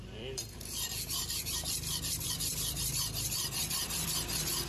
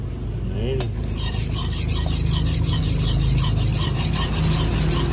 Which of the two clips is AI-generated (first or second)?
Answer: first